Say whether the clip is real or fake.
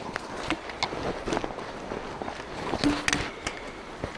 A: real